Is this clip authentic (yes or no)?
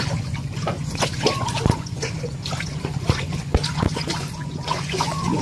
no